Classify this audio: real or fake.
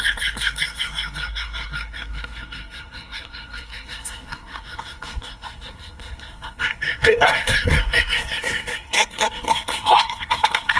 fake